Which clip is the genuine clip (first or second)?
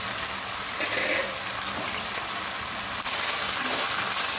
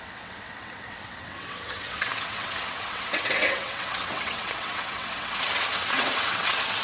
first